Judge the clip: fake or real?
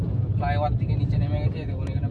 real